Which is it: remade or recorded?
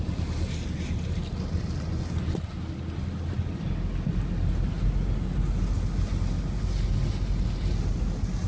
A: recorded